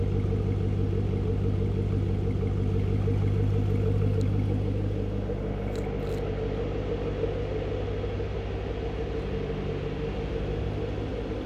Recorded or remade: recorded